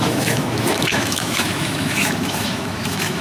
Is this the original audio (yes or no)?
no